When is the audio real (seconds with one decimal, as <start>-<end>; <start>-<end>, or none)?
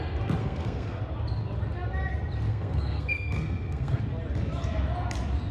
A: 0.0-0.4; 1.0-2.5; 4.0-5.5